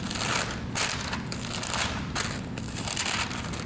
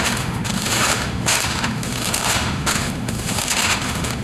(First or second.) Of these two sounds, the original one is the first